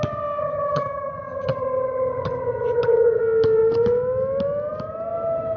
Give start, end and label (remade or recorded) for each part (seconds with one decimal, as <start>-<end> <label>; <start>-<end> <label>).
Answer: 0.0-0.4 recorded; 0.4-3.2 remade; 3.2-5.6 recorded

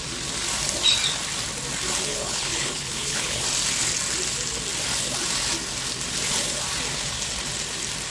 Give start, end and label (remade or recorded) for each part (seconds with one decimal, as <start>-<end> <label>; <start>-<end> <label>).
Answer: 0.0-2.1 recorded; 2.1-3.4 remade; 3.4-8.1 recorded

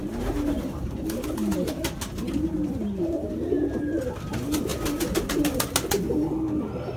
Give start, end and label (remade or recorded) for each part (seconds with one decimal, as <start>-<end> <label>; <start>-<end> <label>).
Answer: 0.0-7.0 recorded